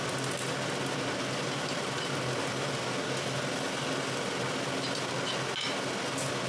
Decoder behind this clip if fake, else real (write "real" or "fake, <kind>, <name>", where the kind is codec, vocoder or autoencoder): real